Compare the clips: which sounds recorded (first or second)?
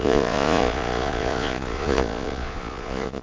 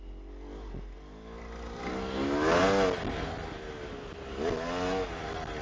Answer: second